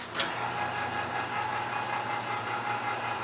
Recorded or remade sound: recorded